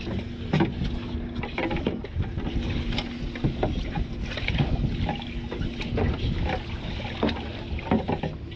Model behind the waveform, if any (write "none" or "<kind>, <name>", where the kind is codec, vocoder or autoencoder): none